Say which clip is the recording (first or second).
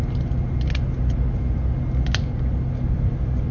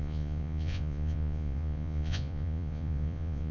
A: first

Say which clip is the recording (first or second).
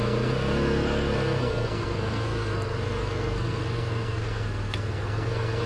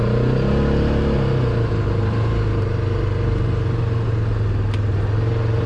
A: second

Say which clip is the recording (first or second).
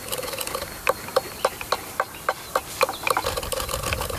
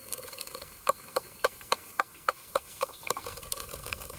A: first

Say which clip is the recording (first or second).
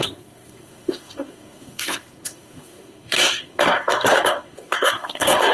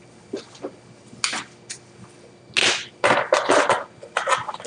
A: second